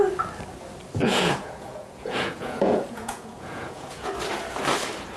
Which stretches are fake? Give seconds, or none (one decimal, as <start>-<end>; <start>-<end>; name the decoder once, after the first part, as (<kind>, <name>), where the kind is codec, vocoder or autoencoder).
1.0-4.1 (vocoder, Vocos)